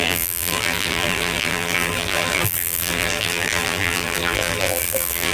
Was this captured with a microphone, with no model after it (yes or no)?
no